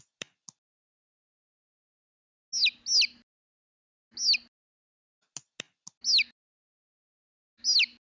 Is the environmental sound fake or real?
real